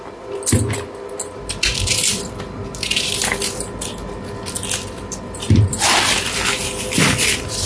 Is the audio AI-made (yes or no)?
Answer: no